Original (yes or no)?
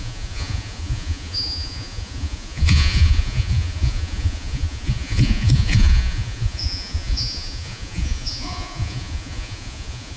no